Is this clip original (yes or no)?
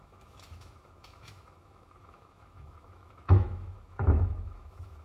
no